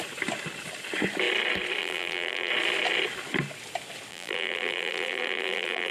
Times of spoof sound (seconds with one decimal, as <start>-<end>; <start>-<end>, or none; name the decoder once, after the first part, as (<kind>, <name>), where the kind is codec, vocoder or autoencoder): 1.8-2.5 (vocoder, BigVGAN v2); 4.1-5.9

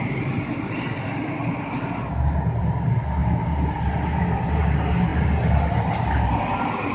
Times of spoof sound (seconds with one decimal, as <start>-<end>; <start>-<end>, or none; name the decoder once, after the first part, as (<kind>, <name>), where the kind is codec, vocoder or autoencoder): none

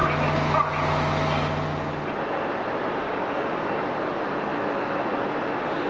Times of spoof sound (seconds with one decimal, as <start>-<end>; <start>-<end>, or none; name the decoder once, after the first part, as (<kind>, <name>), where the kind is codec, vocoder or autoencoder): 3.0-3.8 (codec, DAC)

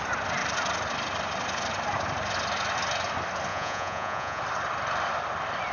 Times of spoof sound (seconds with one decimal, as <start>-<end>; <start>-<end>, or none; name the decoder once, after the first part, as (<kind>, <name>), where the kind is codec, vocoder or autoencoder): 3.5-4.4 (vocoder, Vocos)

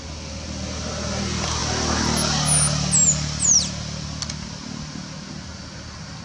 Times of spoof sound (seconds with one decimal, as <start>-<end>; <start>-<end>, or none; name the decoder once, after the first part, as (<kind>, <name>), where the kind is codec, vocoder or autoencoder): none

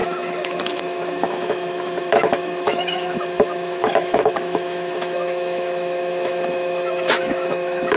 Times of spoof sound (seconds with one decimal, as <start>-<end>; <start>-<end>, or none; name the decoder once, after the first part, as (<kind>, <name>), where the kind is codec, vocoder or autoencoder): 0.0-8.0 (autoencoder, DAC-VAE)